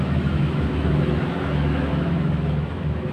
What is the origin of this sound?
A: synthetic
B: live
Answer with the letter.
A